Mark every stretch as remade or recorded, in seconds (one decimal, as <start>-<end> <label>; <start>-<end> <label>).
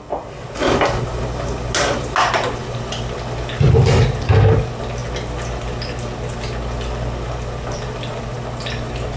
0.0-9.2 recorded